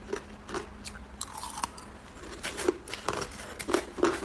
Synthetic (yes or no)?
no